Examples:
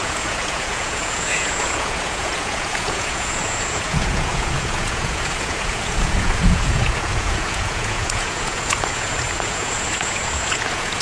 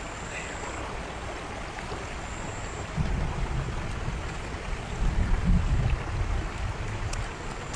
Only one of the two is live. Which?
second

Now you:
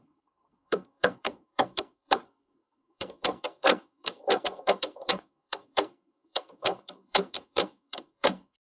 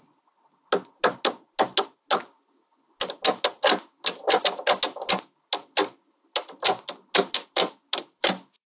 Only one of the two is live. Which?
second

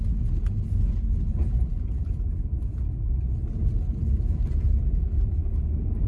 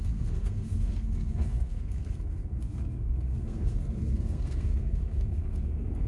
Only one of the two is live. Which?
first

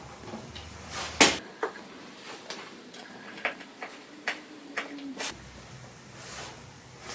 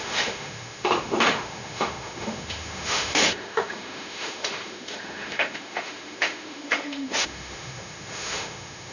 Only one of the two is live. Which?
first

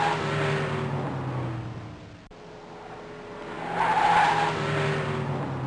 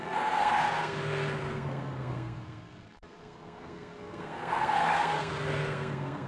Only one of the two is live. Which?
first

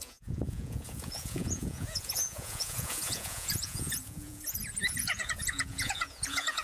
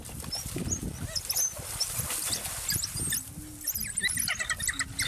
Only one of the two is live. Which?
second